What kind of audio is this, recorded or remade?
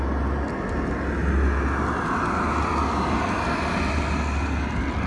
recorded